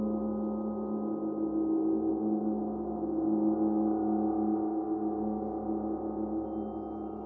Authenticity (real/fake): real